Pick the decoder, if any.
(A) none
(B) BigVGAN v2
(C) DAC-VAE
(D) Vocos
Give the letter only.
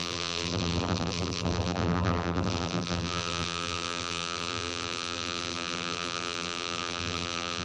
B